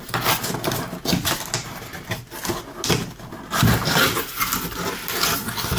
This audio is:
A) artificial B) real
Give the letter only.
B